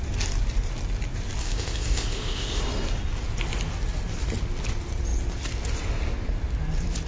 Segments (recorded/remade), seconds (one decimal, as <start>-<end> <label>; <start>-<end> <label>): 0.0-1.4 recorded; 1.4-2.6 remade; 2.6-7.1 recorded

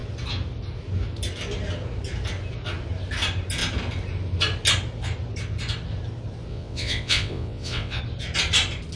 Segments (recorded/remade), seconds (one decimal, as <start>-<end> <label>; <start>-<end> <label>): 0.0-6.5 recorded; 6.5-8.0 remade; 8.0-9.0 recorded

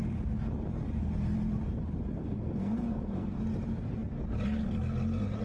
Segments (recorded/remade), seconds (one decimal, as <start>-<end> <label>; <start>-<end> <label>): 0.0-2.2 recorded; 2.2-3.4 remade; 3.4-5.4 recorded

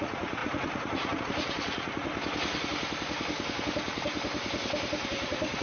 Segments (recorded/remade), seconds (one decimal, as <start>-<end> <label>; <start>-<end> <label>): 0.0-2.1 remade; 2.1-5.1 recorded; 5.1-5.6 remade